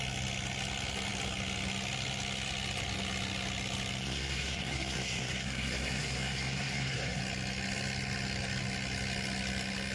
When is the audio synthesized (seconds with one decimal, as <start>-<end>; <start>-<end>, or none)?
4.0-7.2